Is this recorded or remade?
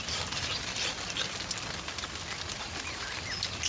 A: recorded